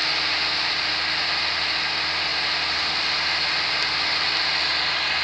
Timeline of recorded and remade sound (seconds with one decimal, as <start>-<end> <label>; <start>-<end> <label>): 0.0-5.2 recorded